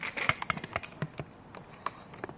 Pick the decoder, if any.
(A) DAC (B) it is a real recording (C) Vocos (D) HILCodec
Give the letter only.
B